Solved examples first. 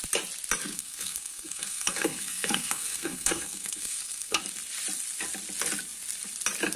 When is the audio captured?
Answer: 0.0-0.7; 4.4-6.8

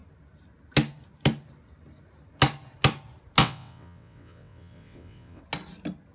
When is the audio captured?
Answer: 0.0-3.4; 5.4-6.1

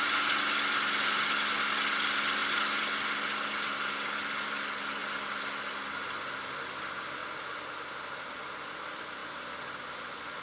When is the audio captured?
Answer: 0.0-10.4

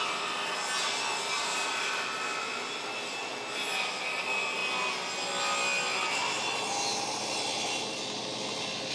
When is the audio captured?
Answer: 0.0-3.2; 4.0-8.9